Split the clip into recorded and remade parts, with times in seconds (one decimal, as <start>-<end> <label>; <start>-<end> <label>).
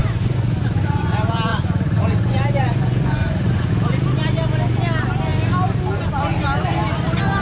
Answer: 0.0-1.0 remade; 1.0-1.5 recorded; 1.5-3.7 remade; 3.7-7.4 recorded